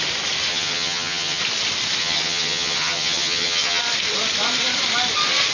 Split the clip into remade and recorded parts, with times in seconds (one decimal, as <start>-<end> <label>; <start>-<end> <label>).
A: 0.0-0.5 recorded; 0.5-1.4 remade; 1.4-2.0 recorded; 2.0-3.8 remade; 3.8-5.5 recorded